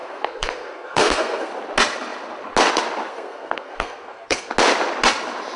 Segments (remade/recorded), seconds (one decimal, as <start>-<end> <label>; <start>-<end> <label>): 0.0-1.5 remade; 1.5-3.1 recorded; 3.1-4.5 remade; 4.5-5.6 recorded